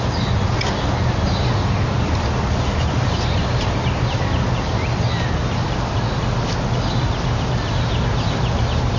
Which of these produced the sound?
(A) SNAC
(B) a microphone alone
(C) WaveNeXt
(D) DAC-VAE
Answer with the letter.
B